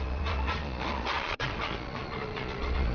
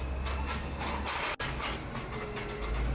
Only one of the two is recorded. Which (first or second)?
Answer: second